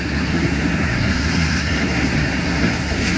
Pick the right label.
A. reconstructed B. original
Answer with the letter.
A